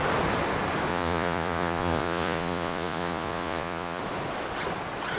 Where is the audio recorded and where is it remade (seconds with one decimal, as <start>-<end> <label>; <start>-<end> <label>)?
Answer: 0.0-0.9 recorded; 0.9-4.0 remade; 4.0-5.2 recorded